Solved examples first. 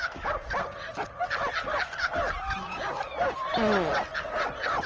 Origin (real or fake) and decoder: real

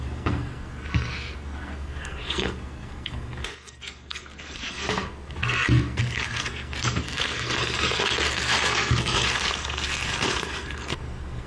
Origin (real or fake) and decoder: fake, codec, SNAC